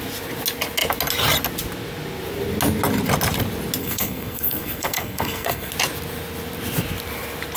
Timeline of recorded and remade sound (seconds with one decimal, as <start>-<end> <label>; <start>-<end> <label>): 0.0-3.8 recorded; 3.8-5.7 remade; 5.7-7.6 recorded